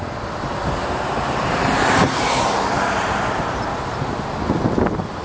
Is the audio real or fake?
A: real